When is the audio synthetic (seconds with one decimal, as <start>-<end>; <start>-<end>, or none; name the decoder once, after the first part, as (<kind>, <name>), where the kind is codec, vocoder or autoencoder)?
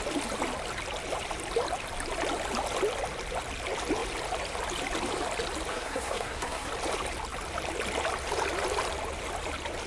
5.7-6.7 (codec, SNAC)